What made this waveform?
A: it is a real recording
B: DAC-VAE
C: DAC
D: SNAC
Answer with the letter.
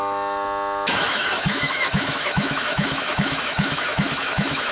B